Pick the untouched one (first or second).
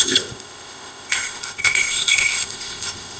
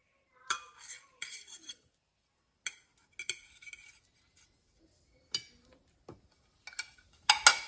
second